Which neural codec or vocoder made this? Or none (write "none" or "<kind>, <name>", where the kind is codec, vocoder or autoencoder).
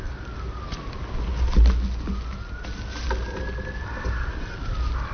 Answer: none